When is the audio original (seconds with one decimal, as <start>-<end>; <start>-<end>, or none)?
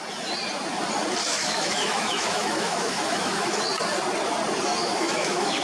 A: 0.0-1.2; 3.6-4.8